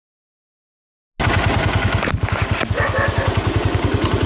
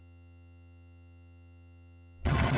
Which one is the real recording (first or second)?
first